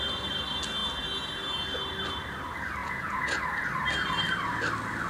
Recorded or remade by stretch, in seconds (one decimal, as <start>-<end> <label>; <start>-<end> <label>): 0.0-2.8 recorded; 2.8-3.4 remade; 3.4-5.1 recorded